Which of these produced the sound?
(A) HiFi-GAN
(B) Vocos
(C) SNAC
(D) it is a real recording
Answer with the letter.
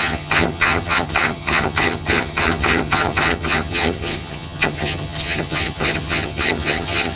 A